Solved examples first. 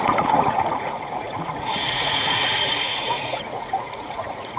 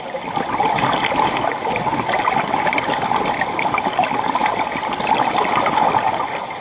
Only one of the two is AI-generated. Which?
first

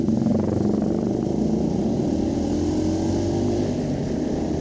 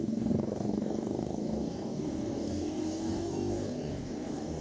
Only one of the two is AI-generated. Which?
second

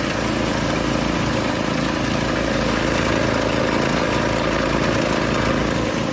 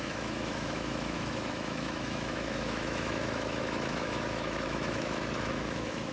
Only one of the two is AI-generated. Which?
second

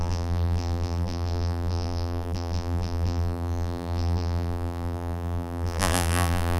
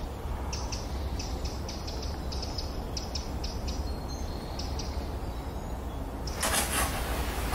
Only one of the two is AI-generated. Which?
first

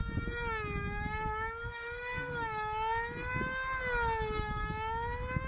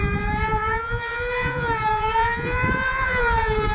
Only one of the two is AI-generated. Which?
second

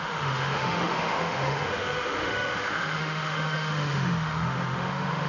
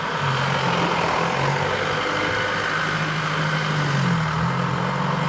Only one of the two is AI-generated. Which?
first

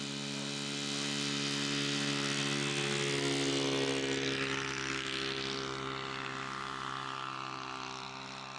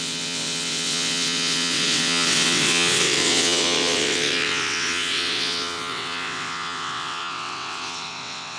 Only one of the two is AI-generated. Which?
second